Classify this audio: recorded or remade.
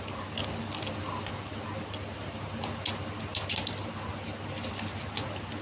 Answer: recorded